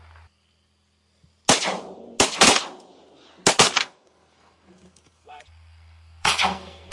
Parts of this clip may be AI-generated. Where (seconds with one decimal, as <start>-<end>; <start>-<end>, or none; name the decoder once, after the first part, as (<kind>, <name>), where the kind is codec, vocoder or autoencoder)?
3.8-6.9 (codec, SNAC)